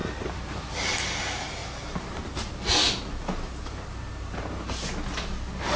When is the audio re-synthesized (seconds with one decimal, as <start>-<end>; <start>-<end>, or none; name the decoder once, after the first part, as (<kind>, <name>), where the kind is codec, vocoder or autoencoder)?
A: 0.0-1.2 (vocoder, BigVGAN v2)